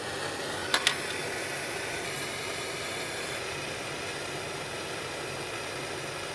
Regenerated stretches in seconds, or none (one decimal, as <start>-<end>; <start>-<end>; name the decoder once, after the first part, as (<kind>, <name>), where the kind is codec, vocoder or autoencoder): none